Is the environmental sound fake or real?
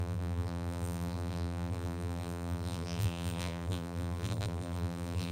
fake